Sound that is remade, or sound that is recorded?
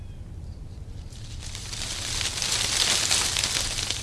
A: recorded